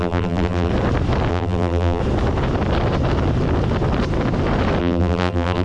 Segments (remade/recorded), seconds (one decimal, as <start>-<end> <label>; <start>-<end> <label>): 0.0-0.7 remade; 0.7-1.3 recorded; 1.3-2.0 remade; 2.0-4.8 recorded; 4.8-5.6 remade